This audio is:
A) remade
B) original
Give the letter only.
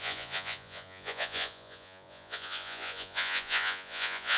A